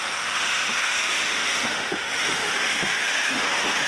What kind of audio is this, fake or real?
fake